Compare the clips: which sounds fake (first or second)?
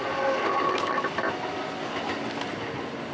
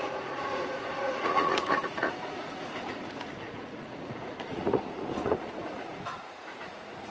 second